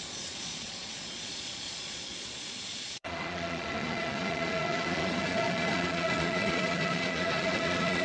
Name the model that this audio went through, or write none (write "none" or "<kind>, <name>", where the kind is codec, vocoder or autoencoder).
vocoder, Vocos